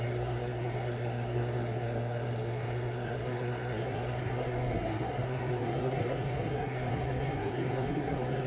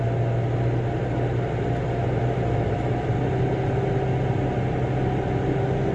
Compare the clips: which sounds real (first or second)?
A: second